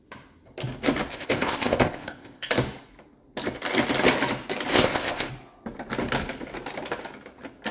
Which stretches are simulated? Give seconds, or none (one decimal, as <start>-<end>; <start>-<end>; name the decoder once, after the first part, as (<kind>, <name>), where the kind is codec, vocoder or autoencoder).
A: 1.1-2.5 (codec, ZipCodec); 4.7-5.3